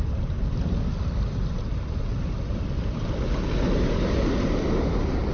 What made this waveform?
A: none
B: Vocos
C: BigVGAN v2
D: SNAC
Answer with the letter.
A